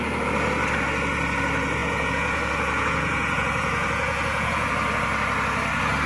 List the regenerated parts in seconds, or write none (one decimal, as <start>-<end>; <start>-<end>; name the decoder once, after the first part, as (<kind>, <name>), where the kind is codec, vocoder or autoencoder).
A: 1.8-4.7 (vocoder, Vocos)